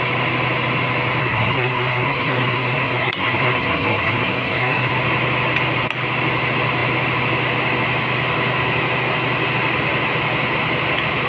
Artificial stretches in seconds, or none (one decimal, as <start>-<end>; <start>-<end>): 1.2-4.9